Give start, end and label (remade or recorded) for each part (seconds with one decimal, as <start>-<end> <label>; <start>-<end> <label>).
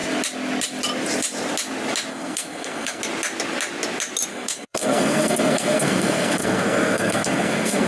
0.0-2.1 recorded; 2.1-3.0 remade; 3.0-4.3 recorded; 4.3-7.9 remade